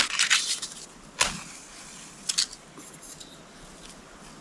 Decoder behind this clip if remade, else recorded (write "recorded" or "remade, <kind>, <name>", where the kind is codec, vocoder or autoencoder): recorded